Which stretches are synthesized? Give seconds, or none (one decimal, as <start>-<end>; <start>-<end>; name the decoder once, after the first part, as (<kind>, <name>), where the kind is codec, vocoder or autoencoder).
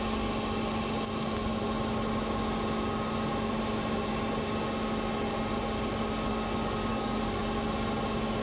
6.9-7.4 (codec, DAC)